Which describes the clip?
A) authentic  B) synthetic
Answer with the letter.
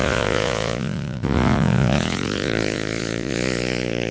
B